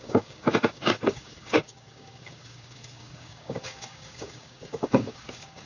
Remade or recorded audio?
remade